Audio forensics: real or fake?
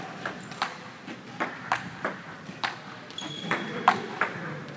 real